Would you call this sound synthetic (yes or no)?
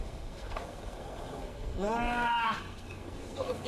yes